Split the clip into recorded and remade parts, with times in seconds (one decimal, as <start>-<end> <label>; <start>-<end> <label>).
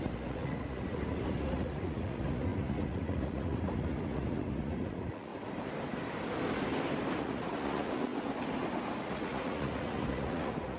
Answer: 0.0-5.3 remade; 5.3-7.2 recorded; 7.2-8.1 remade; 8.1-9.0 recorded; 9.0-10.8 remade